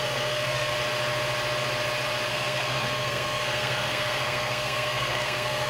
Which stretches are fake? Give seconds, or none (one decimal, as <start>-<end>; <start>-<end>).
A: 0.0-0.7; 2.3-5.7